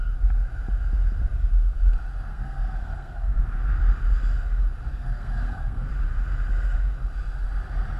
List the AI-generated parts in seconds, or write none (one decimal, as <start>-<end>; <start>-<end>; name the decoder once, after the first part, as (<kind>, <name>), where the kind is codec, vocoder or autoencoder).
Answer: 2.3-3.4 (codec, SNAC); 4.9-5.9